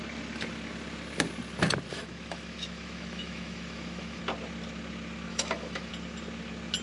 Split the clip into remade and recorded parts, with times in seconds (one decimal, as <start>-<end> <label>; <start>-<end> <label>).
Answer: 0.0-1.9 recorded; 1.9-4.2 remade; 4.2-5.3 recorded; 5.3-5.9 remade; 5.9-6.8 recorded